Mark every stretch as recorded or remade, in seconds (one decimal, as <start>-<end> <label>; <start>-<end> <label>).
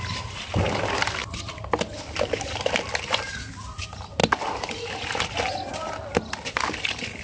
0.0-7.2 recorded